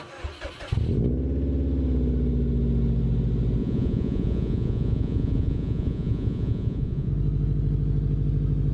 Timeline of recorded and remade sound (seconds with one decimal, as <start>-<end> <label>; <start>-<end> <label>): 0.0-3.6 recorded; 3.6-7.1 remade; 7.1-8.7 recorded